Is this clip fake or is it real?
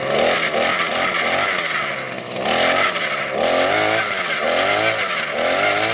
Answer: real